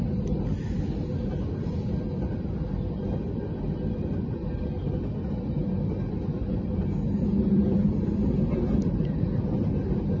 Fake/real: real